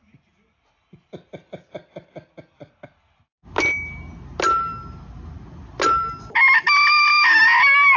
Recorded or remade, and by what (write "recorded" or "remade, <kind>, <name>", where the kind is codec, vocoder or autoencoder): recorded